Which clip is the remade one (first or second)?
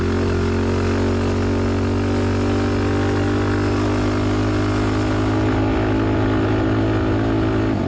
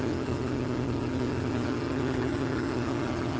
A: second